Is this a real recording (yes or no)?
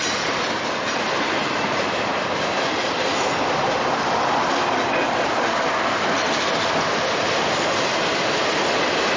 yes